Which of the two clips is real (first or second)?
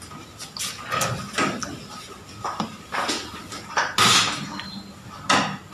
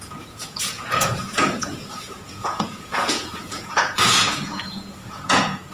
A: first